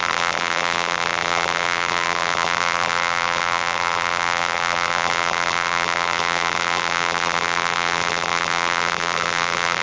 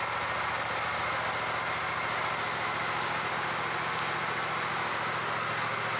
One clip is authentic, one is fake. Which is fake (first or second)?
first